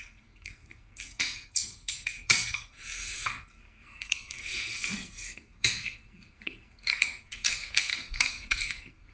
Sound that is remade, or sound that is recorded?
remade